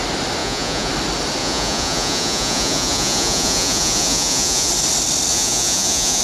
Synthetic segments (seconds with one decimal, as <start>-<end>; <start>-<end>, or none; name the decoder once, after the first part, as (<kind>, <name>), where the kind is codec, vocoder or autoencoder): 0.4-0.9 (vocoder, Vocos); 1.4-4.7; 5.3-6.2